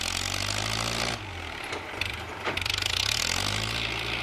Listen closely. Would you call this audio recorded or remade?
remade